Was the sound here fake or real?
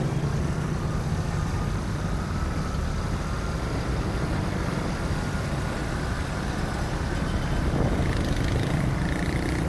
real